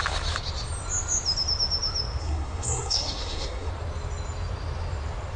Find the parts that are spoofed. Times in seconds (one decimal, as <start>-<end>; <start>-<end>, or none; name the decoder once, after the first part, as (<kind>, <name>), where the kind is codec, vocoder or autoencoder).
2.2-3.7 (codec, SNAC)